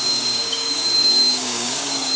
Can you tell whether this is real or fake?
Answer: fake